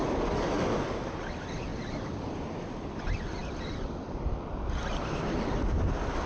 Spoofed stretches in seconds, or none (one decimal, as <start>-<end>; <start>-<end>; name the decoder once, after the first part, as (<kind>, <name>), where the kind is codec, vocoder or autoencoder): none